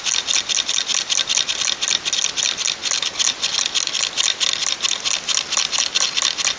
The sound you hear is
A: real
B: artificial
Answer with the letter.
A